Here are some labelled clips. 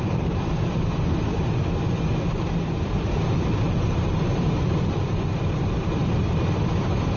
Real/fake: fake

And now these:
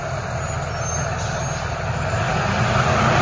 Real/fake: real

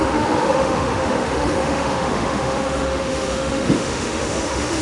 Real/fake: fake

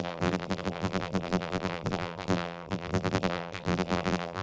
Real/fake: fake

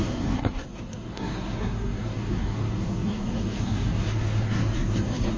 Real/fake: fake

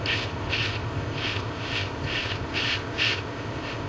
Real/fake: fake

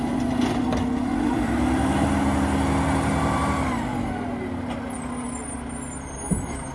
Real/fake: real